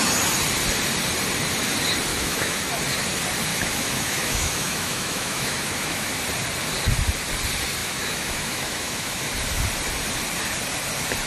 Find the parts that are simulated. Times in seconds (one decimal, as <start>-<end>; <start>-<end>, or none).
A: 2.1-2.6; 3.5-6.2; 7.8-9.2